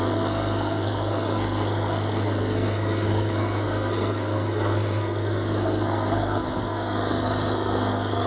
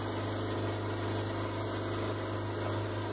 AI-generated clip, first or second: first